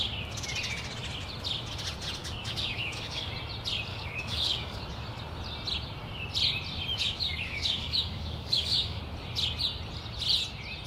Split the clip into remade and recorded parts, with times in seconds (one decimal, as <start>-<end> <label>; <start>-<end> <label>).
0.0-2.2 recorded; 2.2-3.3 remade; 3.3-3.9 recorded; 3.9-4.8 remade; 4.8-6.9 recorded; 6.9-9.0 remade; 9.0-10.9 recorded